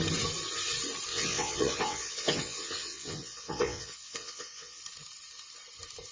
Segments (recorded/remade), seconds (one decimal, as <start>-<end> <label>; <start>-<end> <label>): 0.0-1.1 recorded; 1.1-4.8 remade; 4.8-6.1 recorded